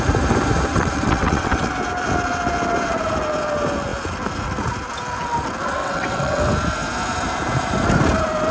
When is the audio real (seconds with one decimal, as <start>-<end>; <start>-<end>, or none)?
0.0-0.7; 1.7-5.8; 6.4-8.5

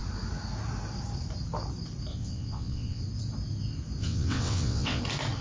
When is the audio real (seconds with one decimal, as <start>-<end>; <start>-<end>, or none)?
0.0-2.1; 3.0-4.0; 5.0-5.4

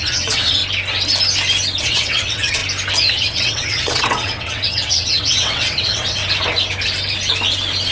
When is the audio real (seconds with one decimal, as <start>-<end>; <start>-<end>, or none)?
0.6-1.8; 2.6-3.1; 6.2-7.9